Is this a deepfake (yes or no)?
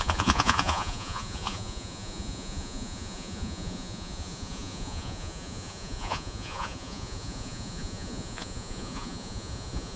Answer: yes